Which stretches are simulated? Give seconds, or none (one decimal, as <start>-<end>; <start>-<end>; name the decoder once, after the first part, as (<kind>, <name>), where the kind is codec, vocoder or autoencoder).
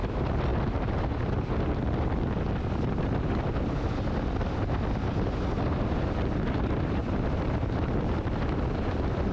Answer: 7.0-7.6 (vocoder, BigVGAN v2)